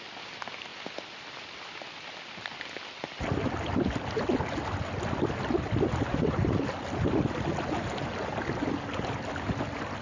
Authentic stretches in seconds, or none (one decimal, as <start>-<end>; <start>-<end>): 0.0-10.0